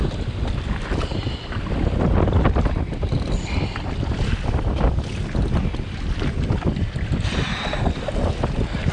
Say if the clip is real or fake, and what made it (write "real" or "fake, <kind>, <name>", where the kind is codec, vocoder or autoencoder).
real